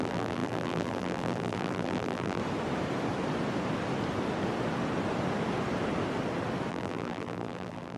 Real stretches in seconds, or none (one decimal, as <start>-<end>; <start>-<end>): 2.4-6.7